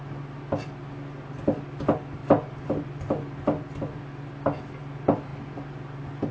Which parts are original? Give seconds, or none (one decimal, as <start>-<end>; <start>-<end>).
0.0-6.3